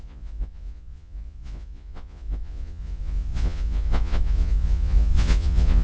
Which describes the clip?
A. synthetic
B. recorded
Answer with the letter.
A